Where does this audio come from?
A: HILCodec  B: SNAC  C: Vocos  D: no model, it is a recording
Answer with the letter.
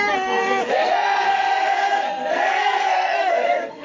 B